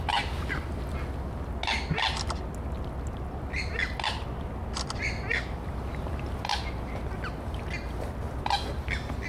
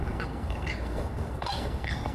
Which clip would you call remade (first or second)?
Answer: second